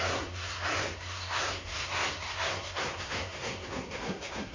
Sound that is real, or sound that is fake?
fake